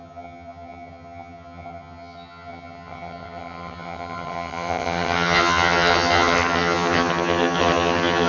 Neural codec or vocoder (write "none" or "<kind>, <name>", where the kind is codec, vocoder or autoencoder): vocoder, HiFi-GAN